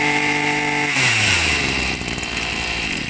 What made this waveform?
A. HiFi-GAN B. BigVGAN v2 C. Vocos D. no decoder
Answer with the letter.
B